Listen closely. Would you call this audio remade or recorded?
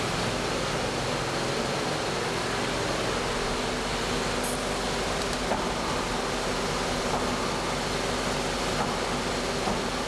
recorded